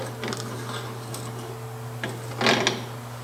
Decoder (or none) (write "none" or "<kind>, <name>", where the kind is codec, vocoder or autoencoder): none